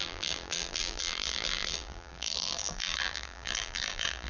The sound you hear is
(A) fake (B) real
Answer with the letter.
A